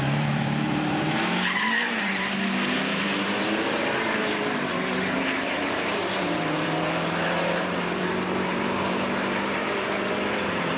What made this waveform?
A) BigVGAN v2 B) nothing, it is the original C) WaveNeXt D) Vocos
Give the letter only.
A